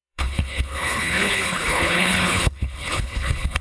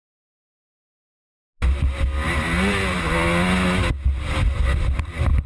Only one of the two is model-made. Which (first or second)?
first